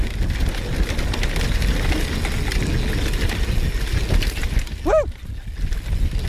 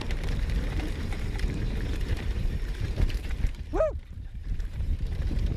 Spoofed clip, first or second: second